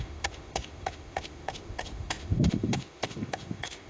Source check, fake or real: fake